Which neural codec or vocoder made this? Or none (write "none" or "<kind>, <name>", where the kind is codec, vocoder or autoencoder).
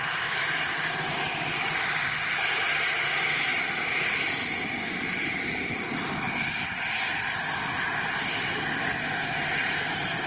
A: vocoder, BigVGAN v2